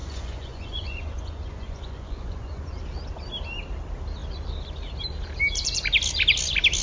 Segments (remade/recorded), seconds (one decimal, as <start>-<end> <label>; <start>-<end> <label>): 0.0-2.8 remade; 2.8-6.8 recorded